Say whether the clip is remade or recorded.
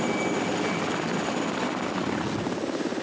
recorded